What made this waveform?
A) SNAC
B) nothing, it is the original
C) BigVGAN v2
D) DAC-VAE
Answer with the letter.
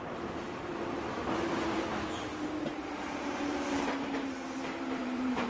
C